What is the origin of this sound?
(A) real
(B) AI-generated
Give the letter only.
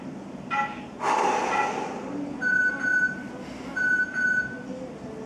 A